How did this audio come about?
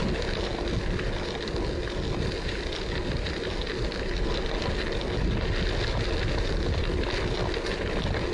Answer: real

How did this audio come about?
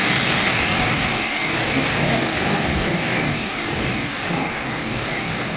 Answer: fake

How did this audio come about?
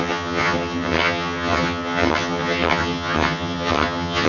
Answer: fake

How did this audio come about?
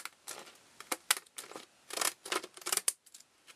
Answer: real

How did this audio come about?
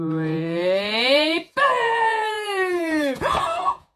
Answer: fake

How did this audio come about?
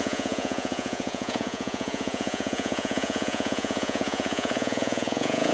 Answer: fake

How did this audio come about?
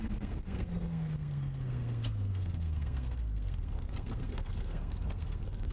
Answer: fake